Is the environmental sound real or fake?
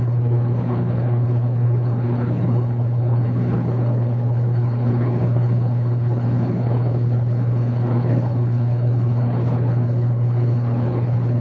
fake